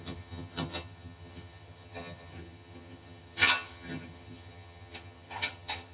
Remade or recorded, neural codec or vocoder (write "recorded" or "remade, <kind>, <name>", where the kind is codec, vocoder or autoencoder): remade, vocoder, HiFi-GAN